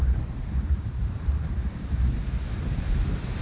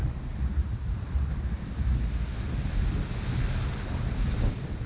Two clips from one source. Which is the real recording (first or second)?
second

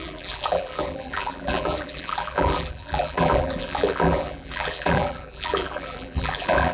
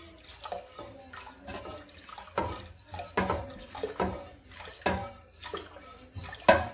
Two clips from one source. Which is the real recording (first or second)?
second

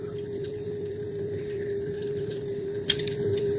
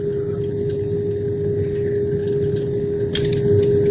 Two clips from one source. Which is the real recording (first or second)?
second